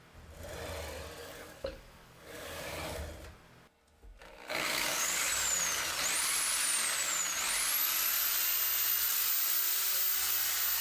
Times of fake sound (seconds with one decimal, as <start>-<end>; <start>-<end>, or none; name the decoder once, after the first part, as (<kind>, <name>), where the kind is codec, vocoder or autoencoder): 1.2-3.0 (codec, DAC); 4.2-5.3